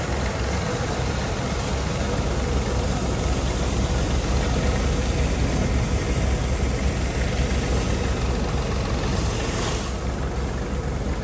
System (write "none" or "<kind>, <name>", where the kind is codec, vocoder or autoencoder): none